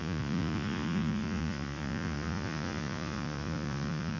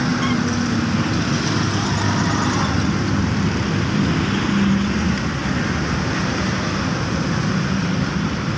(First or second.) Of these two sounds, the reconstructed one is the first